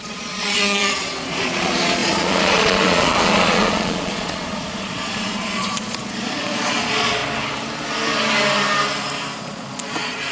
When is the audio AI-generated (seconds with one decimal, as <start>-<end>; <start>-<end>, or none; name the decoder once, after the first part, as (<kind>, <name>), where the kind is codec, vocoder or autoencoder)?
0.0-7.2 (vocoder, Vocos); 9.4-10.3